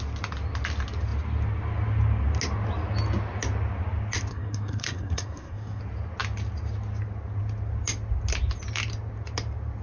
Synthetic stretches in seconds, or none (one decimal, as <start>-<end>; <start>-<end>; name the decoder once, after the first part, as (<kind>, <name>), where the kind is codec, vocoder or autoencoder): 4.3-5.8 (codec, SNAC)